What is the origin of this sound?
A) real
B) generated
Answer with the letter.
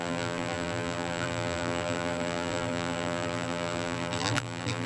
B